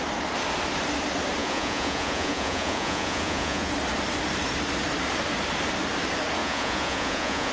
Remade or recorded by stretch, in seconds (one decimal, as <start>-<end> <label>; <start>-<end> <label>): 0.0-1.4 recorded; 1.4-3.7 remade; 3.7-6.4 recorded; 6.4-7.5 remade